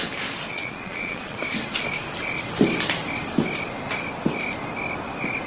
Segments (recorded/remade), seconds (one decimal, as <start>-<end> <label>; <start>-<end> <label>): 0.0-0.5 recorded; 0.5-1.4 remade; 1.4-5.5 recorded